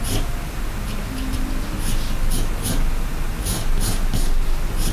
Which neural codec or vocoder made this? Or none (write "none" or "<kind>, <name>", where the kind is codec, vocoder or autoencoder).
none